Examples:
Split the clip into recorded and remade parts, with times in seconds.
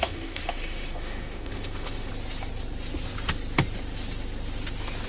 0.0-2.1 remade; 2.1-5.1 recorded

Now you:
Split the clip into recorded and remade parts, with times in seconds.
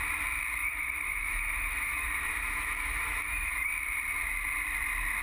0.0-0.6 recorded; 0.6-3.7 remade; 3.7-5.2 recorded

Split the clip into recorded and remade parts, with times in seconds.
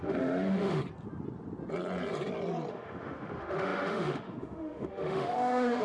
0.0-0.8 remade; 0.8-2.7 recorded; 2.7-5.8 remade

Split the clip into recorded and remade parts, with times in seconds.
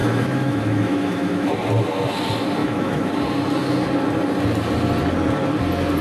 0.0-1.5 remade; 1.5-2.6 recorded; 2.6-3.1 remade; 3.1-6.0 recorded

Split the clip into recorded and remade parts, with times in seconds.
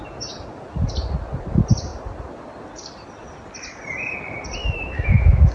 0.0-4.6 recorded; 4.6-5.5 remade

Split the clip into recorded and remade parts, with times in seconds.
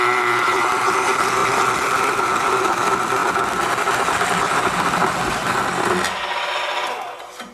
0.0-7.5 recorded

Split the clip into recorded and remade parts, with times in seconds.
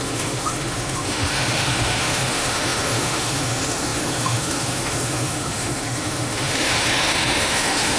0.0-8.0 remade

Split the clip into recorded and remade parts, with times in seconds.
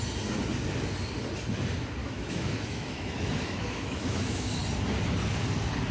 0.0-2.0 recorded; 2.0-4.6 remade; 4.6-5.9 recorded